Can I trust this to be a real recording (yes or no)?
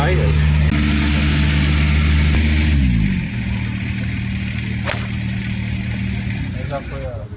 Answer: yes